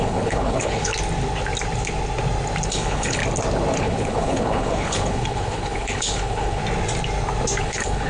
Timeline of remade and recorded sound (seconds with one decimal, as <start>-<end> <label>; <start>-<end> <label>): 0.0-0.9 remade; 0.9-2.7 recorded; 2.7-3.2 remade; 3.2-3.8 recorded; 3.8-6.6 remade; 6.6-7.6 recorded; 7.6-8.1 remade